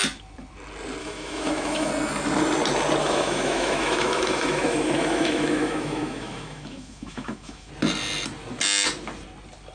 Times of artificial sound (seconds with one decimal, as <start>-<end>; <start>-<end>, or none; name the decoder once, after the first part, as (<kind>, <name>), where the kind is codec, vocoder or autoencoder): 1.0-1.9 (autoencoder, DAC-VAE); 3.0-7.7